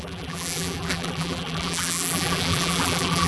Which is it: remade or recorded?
remade